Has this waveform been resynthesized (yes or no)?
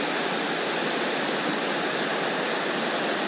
no